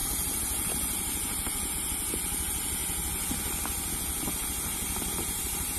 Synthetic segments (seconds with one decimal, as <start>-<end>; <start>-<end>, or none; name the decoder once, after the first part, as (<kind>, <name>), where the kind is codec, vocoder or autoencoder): 0.0-2.8 (vocoder, BigVGAN v2); 5.2-5.8